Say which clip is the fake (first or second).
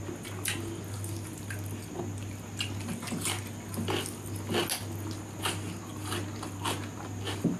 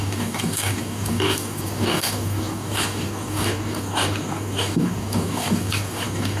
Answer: second